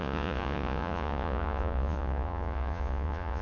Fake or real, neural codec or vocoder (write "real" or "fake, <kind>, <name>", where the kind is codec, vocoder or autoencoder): fake, vocoder, Vocos